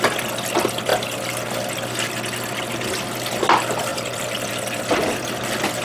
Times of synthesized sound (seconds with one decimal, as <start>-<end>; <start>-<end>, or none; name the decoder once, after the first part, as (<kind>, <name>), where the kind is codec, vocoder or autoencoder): 3.9-4.8 (vocoder, BigVGAN v2)